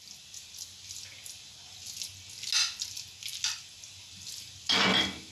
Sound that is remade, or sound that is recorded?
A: recorded